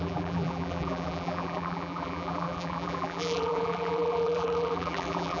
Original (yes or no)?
no